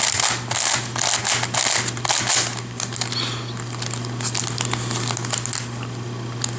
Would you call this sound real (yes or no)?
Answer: yes